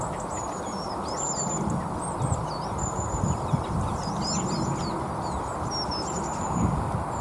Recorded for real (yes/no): yes